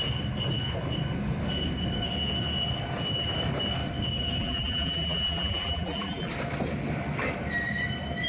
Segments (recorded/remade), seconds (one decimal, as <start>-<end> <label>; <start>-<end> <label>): 0.0-4.4 recorded; 4.4-6.3 remade; 6.3-8.3 recorded